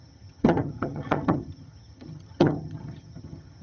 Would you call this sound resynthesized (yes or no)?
yes